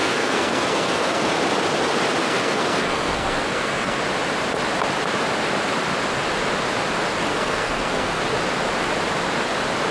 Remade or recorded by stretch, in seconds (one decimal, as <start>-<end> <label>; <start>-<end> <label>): 0.0-1.3 remade; 1.3-2.2 recorded; 2.2-4.0 remade; 4.0-7.3 recorded; 7.3-8.2 remade; 8.2-9.9 recorded

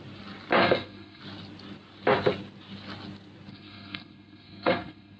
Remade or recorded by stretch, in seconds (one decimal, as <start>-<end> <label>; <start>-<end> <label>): 0.0-0.6 recorded; 0.6-1.2 remade; 1.2-3.5 recorded; 3.5-5.2 remade

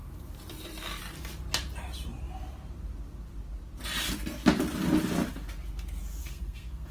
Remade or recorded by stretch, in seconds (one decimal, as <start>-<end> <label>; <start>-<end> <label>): 0.0-6.2 recorded; 6.2-6.9 remade

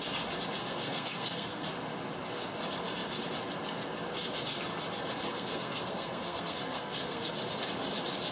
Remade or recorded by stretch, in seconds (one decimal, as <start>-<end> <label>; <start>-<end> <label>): 0.0-0.6 recorded; 0.6-1.7 remade; 1.7-5.3 recorded; 5.3-7.3 remade; 7.3-8.3 recorded

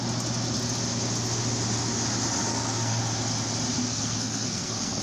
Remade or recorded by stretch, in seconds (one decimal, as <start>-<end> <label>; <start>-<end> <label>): 0.0-2.5 recorded; 2.5-3.0 remade; 3.0-3.9 recorded; 3.9-5.0 remade